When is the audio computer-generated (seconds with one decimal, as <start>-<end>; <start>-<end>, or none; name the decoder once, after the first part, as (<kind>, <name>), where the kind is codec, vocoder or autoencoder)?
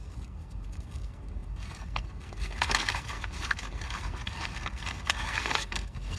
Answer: 0.0-6.2 (codec, SNAC)